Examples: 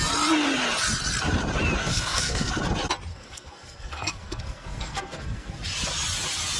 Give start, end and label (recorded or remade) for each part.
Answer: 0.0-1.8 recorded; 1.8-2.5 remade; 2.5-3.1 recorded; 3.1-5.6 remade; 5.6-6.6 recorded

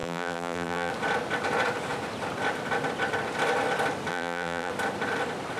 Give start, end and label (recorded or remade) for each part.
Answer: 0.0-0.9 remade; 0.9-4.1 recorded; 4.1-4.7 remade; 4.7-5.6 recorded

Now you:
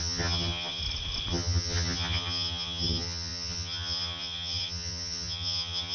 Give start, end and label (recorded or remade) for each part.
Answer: 0.0-0.8 remade; 0.8-1.3 recorded; 1.3-5.9 remade